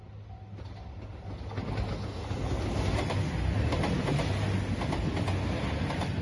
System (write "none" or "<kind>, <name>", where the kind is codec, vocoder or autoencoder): none